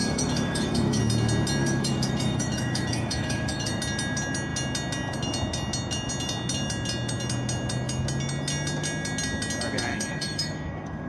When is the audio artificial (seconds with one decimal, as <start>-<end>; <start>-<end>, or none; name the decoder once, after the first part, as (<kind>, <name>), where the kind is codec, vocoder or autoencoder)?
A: 0.0-1.0 (autoencoder, DAC-VAE); 1.6-3.8; 9.9-11.1